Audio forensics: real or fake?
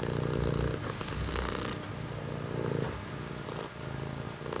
real